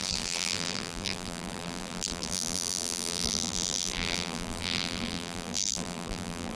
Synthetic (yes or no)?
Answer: yes